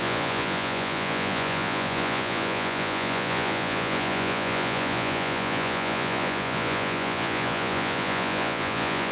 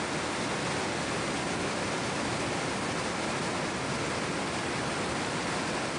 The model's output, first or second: first